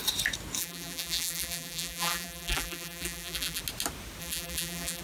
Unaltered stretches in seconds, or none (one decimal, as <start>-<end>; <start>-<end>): 0.0-0.6; 3.6-4.2